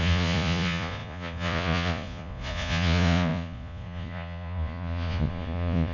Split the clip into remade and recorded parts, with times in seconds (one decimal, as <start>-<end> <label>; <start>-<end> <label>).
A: 0.0-5.9 remade